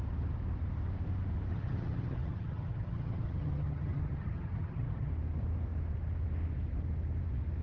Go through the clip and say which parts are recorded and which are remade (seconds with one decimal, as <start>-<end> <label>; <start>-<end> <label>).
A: 0.0-1.5 recorded; 1.5-5.1 remade; 5.1-7.6 recorded